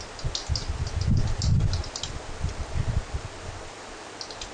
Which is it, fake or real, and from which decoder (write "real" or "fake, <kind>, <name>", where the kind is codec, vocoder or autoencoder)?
real